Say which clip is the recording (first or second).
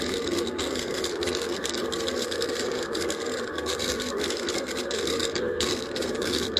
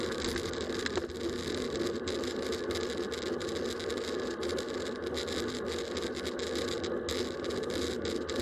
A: second